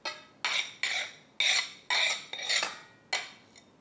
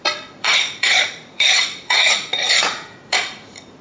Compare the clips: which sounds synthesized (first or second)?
second